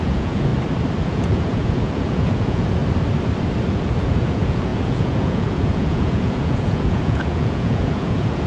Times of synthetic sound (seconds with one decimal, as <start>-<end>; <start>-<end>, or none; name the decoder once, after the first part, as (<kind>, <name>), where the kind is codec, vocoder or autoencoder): 0.0-0.5 (vocoder, Vocos); 1.0-2.8; 3.7-8.5